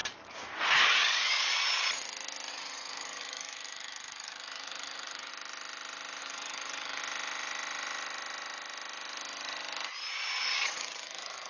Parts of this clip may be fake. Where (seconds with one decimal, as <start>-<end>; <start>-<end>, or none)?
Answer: 0.0-1.5; 2.5-5.3; 6.2-7.0; 10.4-11.5